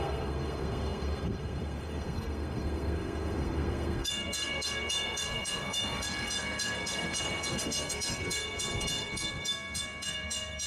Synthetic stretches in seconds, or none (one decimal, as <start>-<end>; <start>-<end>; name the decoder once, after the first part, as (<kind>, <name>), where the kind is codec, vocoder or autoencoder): 0.0-10.7 (codec, SNAC)